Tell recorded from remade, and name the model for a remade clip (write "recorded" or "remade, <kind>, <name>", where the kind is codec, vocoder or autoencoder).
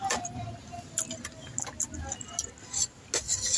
recorded